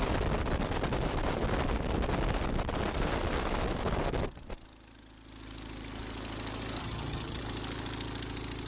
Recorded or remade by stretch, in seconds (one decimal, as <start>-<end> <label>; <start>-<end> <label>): 0.0-6.8 recorded; 6.8-7.4 remade; 7.4-8.7 recorded